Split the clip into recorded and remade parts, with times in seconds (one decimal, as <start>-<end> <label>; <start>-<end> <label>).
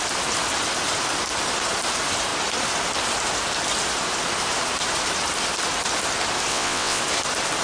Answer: 0.0-6.5 recorded; 6.5-7.0 remade; 7.0-7.6 recorded